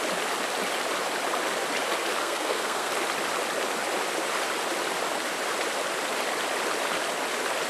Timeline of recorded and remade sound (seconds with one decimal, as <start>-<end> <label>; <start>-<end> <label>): 0.0-2.2 recorded; 2.2-2.9 remade; 2.9-7.7 recorded